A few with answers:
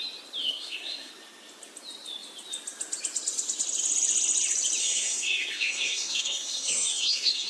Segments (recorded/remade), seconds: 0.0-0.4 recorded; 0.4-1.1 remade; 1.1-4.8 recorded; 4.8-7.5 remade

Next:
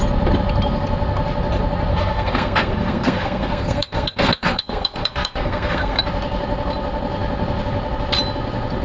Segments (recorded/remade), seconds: 0.0-1.9 recorded; 1.9-6.0 remade; 6.0-8.8 recorded

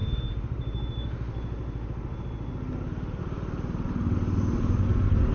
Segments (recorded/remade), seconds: 0.0-5.3 recorded

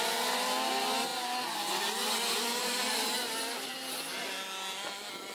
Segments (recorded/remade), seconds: 0.0-5.3 recorded

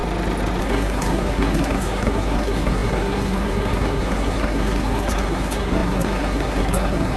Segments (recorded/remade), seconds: 0.0-0.6 recorded; 0.6-7.2 remade